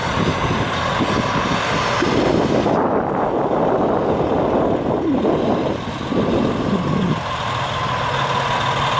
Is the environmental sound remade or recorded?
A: recorded